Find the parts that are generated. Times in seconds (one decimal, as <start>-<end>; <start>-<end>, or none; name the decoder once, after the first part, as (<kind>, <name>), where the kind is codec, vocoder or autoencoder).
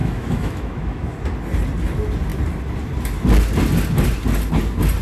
0.0-1.1 (autoencoder, DAC-VAE)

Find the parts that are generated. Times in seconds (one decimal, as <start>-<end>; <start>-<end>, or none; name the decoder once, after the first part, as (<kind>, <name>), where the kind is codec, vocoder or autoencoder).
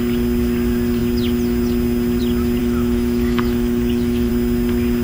2.6-4.3 (autoencoder, DAC-VAE)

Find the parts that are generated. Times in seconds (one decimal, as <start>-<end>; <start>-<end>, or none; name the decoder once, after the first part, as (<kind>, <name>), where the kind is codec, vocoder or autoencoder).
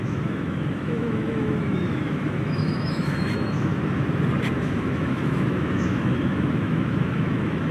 0.0-3.7 (autoencoder, DAC-VAE); 4.5-7.7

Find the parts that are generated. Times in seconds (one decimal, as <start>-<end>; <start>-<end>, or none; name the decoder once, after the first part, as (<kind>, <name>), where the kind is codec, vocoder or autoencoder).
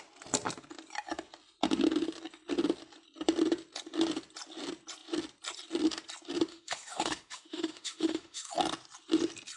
6.5-8.5 (autoencoder, DAC-VAE)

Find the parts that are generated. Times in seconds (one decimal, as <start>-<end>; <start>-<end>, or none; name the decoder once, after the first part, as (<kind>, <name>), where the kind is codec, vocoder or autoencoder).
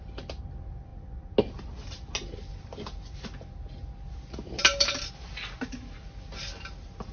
none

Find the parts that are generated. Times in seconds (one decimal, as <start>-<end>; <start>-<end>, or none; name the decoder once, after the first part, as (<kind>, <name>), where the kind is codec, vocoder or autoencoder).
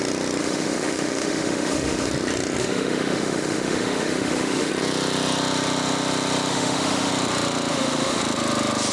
0.4-2.1 (autoencoder, DAC-VAE); 2.6-4.7; 6.5-7.1; 7.7-8.2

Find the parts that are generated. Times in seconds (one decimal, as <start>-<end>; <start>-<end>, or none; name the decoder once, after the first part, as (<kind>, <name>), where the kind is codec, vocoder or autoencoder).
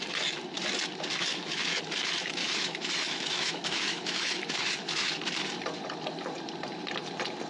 1.3-1.8 (autoencoder, DAC-VAE); 2.4-5.1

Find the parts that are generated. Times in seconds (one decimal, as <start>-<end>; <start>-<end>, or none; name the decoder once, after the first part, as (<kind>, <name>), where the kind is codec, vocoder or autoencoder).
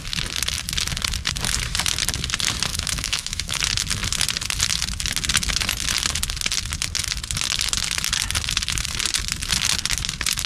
2.7-3.6 (autoencoder, DAC-VAE)